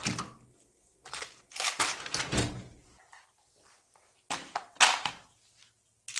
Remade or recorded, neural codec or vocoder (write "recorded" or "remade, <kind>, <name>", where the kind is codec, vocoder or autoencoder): recorded